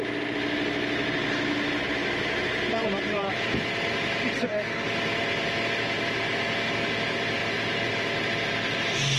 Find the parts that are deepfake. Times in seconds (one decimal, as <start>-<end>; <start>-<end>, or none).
2.0-3.3